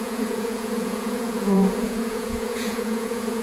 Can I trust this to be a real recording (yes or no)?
no